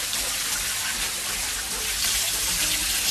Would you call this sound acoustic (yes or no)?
yes